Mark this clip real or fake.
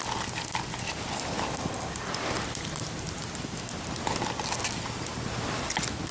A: real